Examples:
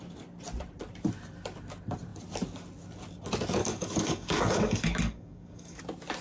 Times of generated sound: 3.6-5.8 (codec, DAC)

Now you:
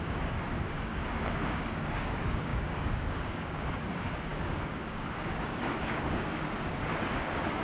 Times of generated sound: 0.0-7.6 (codec, DAC)

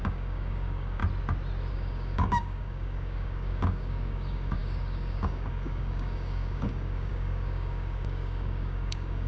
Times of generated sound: 0.0-1.0 (codec, DAC); 1.7-9.3